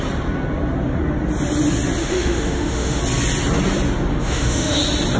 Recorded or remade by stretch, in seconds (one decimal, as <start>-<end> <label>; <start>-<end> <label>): 0.0-2.0 recorded; 2.0-3.0 remade; 3.0-4.1 recorded; 4.1-4.8 remade; 4.8-5.2 recorded